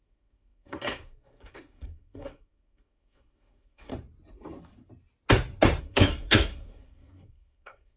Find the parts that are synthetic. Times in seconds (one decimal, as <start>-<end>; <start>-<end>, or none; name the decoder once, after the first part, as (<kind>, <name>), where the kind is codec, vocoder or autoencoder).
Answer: 0.0-3.9 (codec, SNAC); 5.8-8.0